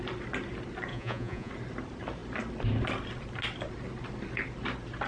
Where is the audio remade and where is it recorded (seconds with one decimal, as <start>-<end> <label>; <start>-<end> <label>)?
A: 0.0-0.9 recorded; 0.9-1.5 remade; 1.5-5.1 recorded